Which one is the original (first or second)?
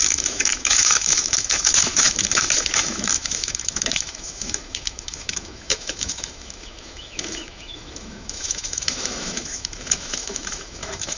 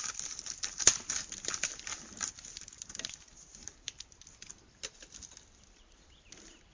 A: second